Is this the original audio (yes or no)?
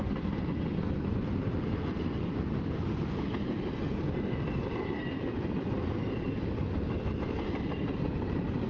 yes